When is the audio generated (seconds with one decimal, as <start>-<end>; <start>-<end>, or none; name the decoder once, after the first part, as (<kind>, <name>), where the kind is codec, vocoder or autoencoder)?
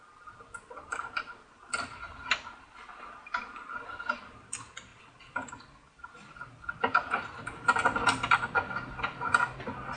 none